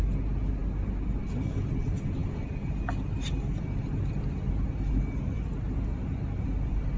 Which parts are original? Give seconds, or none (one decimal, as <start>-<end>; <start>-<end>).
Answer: 0.0-7.0